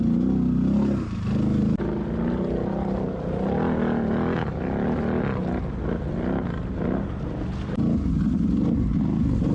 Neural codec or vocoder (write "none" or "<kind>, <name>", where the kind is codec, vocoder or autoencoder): none